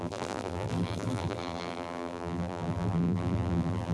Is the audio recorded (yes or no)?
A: no